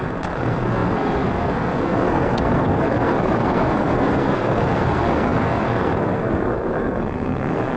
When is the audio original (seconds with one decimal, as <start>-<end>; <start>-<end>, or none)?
none